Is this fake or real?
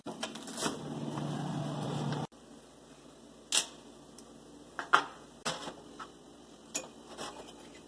real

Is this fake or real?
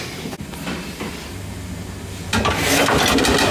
real